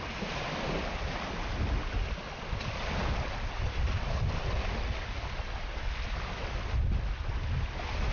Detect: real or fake real